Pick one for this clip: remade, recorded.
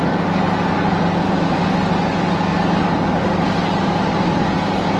recorded